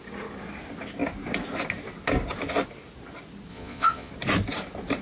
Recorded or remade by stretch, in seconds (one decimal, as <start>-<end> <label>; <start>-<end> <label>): 0.0-3.5 recorded; 3.5-4.1 remade; 4.1-5.0 recorded